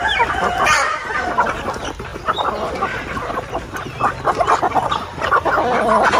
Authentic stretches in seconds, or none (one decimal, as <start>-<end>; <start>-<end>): 0.0-6.2